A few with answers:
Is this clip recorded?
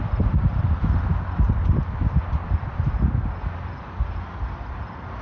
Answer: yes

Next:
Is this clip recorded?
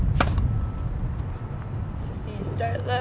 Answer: yes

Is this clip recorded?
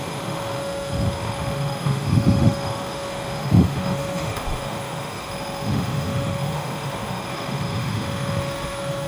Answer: no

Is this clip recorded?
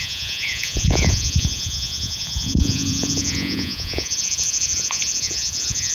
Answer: no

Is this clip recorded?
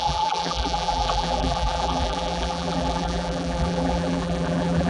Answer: no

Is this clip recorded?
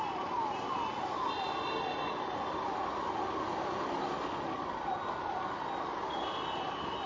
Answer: yes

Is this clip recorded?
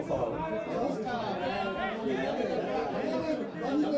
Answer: yes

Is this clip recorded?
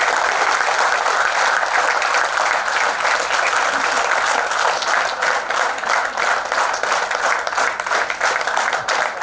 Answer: yes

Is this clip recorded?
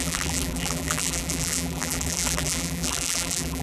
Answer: no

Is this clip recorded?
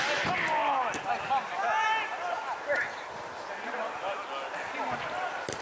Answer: yes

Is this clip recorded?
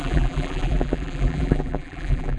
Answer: no